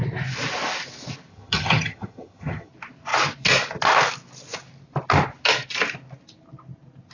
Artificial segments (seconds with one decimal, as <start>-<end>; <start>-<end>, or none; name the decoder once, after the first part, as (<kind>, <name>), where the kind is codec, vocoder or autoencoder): 1.3-2.7 (vocoder, HiFi-GAN)